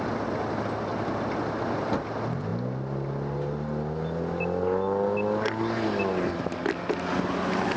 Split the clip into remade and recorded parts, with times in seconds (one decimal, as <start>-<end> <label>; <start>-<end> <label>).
0.0-7.8 recorded